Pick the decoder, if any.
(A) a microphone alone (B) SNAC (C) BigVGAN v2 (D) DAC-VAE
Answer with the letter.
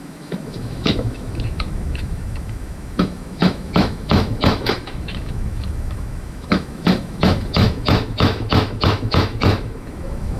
D